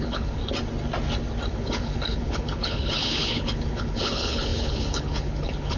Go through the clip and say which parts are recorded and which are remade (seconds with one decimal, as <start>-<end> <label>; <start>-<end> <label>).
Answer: 0.0-0.4 remade; 0.4-1.5 recorded; 1.5-5.8 remade